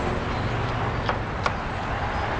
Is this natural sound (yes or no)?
yes